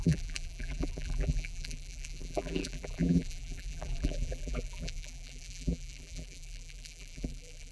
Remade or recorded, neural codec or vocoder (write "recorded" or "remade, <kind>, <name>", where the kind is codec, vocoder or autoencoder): remade, vocoder, BigVGAN v2